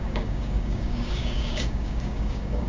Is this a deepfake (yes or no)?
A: yes